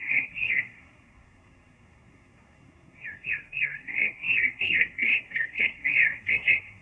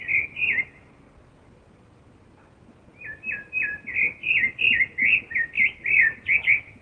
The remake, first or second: first